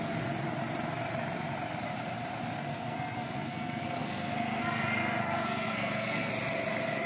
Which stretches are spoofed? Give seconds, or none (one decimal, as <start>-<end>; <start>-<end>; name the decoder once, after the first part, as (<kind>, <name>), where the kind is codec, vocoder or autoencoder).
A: 2.6-6.3 (codec, SNAC)